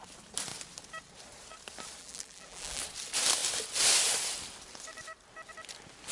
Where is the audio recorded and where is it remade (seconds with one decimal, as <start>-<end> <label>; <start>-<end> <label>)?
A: 0.0-2.0 recorded; 2.0-2.8 remade; 2.8-6.1 recorded